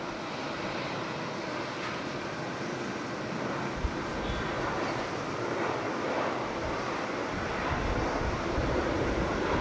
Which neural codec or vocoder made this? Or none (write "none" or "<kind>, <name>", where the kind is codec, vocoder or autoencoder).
none